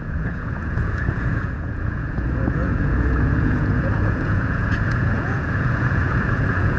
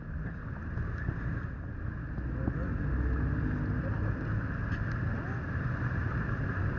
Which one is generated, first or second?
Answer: first